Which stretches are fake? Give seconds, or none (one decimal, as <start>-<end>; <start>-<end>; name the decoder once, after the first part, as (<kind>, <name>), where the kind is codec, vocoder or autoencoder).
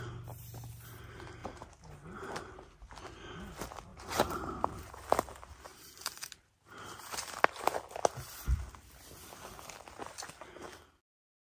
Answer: 3.9-4.9 (vocoder, BigVGAN v2); 5.7-7.4